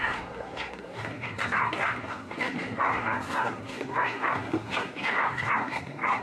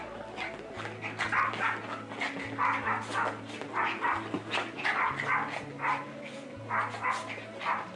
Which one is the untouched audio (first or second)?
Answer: second